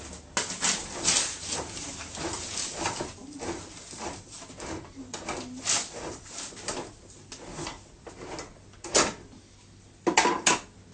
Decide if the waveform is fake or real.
real